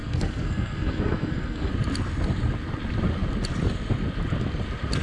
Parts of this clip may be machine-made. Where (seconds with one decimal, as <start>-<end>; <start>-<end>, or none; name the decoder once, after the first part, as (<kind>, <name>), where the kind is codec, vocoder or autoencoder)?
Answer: 0.0-1.7 (codec, SNAC)